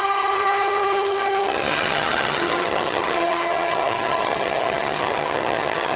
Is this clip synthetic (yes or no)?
yes